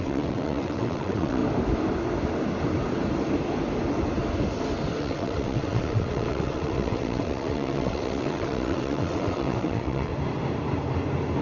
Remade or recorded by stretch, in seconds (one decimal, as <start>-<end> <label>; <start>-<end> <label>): 0.0-1.4 remade; 1.4-5.0 recorded; 5.0-10.1 remade; 10.1-11.4 recorded